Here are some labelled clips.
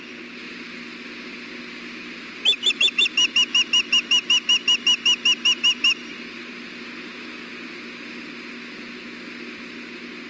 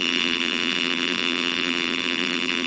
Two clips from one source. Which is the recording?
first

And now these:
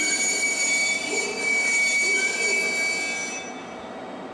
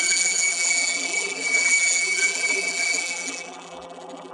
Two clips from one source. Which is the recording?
first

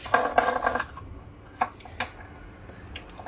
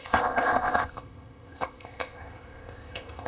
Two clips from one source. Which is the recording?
first